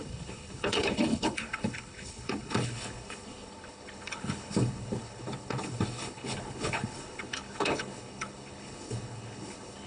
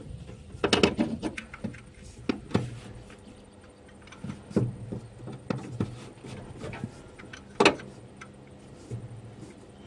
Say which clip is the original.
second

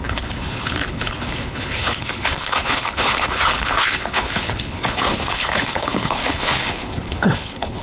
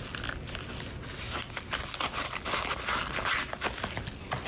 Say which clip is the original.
second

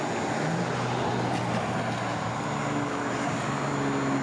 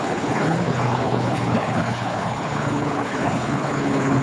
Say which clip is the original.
first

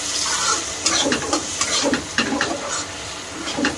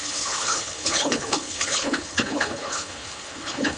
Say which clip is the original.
first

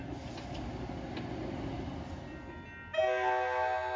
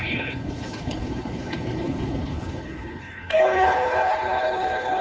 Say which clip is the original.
first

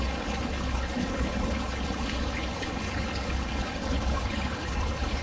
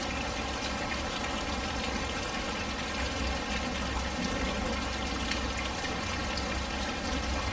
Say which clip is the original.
second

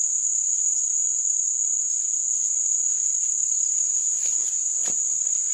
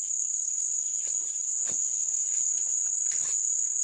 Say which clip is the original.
first